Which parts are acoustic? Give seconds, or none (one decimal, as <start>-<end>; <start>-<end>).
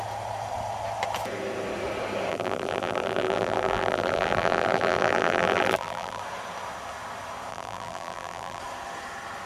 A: 0.0-2.3; 6.2-7.5; 8.6-9.5